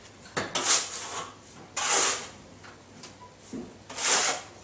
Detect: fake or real real